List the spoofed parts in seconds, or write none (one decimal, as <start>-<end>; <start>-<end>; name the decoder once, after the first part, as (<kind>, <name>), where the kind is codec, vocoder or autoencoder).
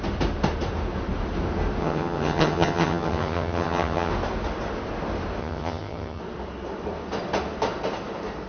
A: 1.8-4.1 (vocoder, HiFi-GAN); 5.4-6.2